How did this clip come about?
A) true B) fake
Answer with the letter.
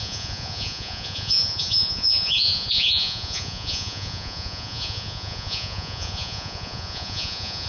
B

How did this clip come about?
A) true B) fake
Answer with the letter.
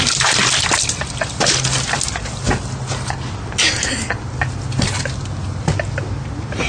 A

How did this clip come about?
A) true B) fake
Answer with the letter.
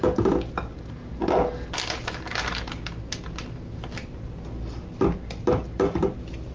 A